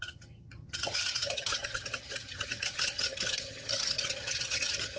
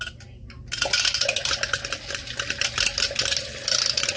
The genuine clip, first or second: second